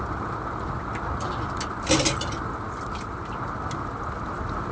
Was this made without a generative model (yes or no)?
yes